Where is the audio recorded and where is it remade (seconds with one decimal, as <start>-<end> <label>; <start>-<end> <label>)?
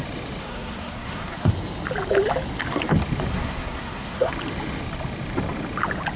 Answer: 0.0-0.4 recorded; 0.4-1.5 remade; 1.5-3.3 recorded; 3.3-4.3 remade; 4.3-6.2 recorded